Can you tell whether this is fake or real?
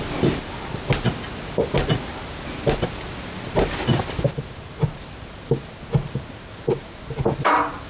real